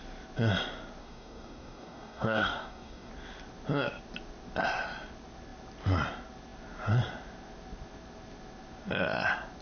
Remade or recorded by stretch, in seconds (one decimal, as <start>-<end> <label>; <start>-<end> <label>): 0.0-1.0 recorded; 1.0-3.1 remade; 3.1-9.6 recorded